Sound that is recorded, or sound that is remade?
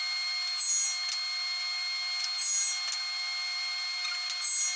recorded